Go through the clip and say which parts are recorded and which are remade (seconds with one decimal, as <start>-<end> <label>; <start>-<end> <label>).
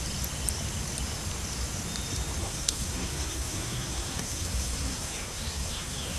0.0-2.4 recorded; 2.4-6.2 remade